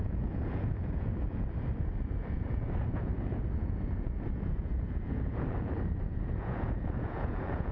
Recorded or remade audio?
remade